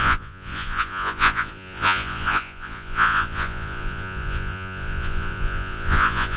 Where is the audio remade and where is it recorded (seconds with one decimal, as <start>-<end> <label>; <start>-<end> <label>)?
0.0-6.4 remade